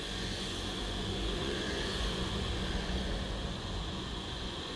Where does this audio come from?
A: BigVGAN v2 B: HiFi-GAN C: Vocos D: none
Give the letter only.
C